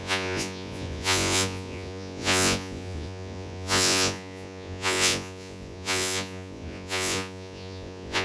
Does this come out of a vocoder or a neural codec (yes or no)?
yes